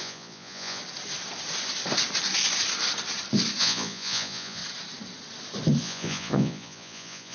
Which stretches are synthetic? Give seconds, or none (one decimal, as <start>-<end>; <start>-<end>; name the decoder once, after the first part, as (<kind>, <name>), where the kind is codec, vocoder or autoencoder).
0.0-0.8 (vocoder, Vocos); 3.6-4.6; 5.8-7.3